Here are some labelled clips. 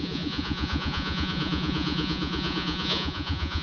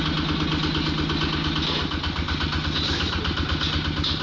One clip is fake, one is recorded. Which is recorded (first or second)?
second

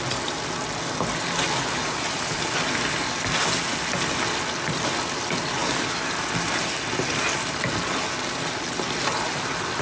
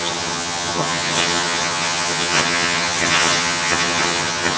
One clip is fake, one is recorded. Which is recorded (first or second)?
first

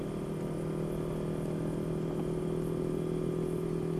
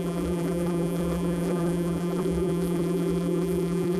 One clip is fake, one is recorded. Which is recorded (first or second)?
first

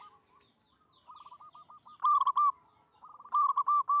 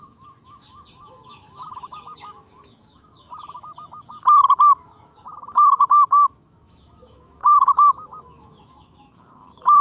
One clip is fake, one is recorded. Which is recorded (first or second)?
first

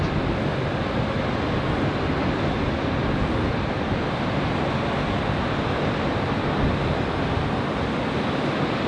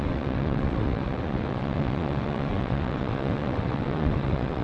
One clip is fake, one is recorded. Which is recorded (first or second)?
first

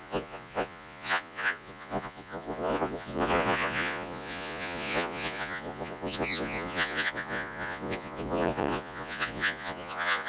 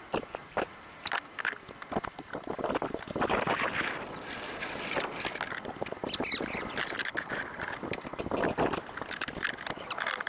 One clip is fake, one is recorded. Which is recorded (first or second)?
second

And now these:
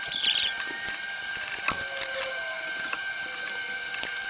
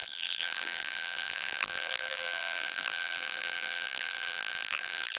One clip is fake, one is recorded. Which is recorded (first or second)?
first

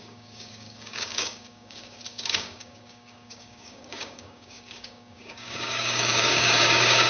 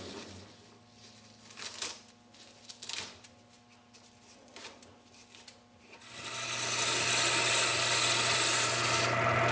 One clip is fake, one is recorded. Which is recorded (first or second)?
second